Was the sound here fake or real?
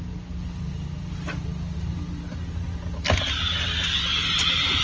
real